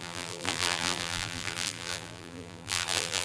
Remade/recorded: remade